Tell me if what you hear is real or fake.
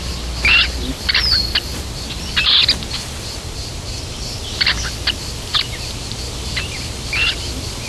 real